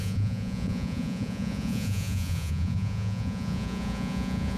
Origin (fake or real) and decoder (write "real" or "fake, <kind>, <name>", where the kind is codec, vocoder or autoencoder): fake, vocoder, Vocos